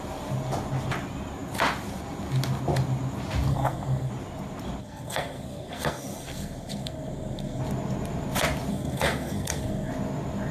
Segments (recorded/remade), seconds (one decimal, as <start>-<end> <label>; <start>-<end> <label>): 0.0-3.5 recorded; 3.5-4.1 remade; 4.1-4.8 recorded; 4.8-7.6 remade; 7.6-8.7 recorded; 8.7-9.9 remade; 9.9-10.5 recorded